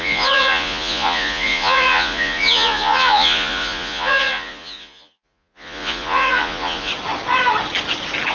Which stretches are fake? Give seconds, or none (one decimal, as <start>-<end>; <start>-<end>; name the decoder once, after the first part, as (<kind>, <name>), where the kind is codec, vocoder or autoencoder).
0.0-6.9 (vocoder, Vocos)